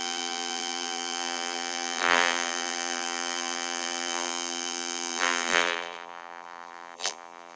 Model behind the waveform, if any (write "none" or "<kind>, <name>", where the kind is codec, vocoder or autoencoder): vocoder, BigVGAN v2